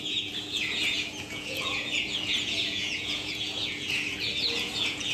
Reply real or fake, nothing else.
fake